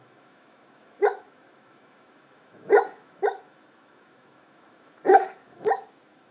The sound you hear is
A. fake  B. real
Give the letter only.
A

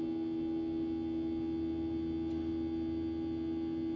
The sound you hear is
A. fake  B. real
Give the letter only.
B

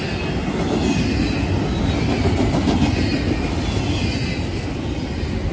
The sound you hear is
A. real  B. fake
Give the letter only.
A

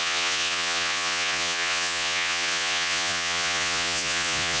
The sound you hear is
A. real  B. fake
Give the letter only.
B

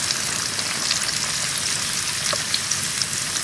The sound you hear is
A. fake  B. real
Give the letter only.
B